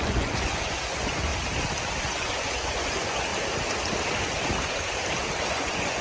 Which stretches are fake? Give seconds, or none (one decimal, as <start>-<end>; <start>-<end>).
0.0-1.3; 2.0-3.3; 5.5-6.0